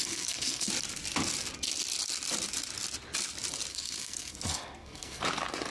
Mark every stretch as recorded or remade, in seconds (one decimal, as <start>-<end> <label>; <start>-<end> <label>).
0.0-0.7 remade; 0.7-3.7 recorded; 3.7-5.2 remade; 5.2-5.7 recorded